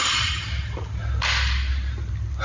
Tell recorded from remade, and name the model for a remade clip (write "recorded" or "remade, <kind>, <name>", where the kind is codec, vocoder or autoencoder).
recorded